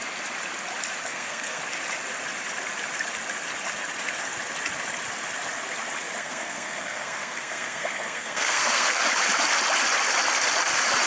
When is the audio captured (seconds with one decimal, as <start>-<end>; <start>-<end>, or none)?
0.0-1.1; 1.6-6.2; 9.0-11.1